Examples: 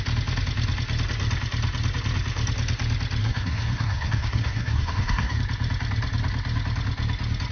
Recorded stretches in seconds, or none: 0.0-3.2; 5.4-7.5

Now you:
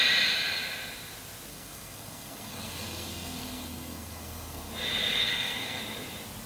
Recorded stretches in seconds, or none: 0.0-1.5; 4.7-5.2; 5.8-6.5

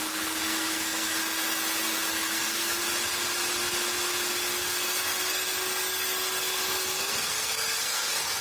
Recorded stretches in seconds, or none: 1.2-2.1; 2.8-4.6

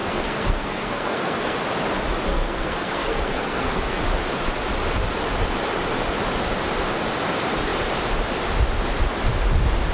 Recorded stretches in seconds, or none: 1.6-2.3; 4.0-9.9

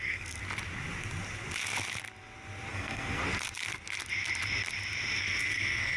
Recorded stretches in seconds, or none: 0.4-2.7; 3.2-5.2

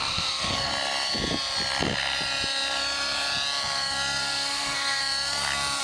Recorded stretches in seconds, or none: 0.7-4.2; 5.0-5.8

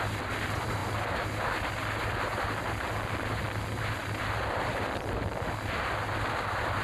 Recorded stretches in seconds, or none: 0.0-6.8

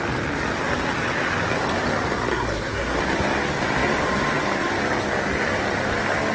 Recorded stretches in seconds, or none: 0.0-2.3; 3.0-6.3